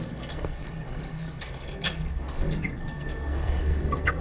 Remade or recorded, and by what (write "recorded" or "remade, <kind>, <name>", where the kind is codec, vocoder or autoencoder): remade, codec, SNAC